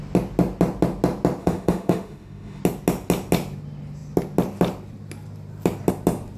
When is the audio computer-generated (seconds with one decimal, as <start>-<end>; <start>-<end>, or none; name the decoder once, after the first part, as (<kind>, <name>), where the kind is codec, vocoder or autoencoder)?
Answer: 1.4-2.6 (autoencoder, DAC-VAE)